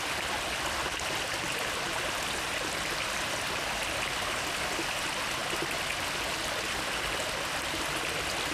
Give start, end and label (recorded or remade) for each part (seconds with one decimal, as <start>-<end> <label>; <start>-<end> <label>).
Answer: 0.0-8.5 recorded